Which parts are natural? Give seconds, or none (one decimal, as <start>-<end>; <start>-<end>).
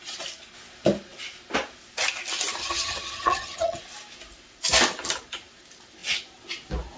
0.0-2.6; 3.8-7.0